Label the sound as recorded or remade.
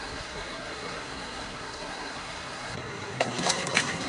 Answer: remade